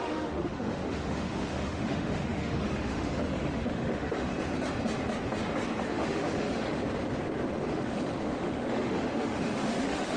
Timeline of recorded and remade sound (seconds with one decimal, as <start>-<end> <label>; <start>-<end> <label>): 0.0-4.3 remade; 4.3-5.8 recorded; 5.8-6.7 remade; 6.7-7.7 recorded; 7.7-10.2 remade